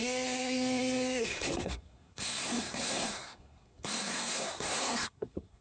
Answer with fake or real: fake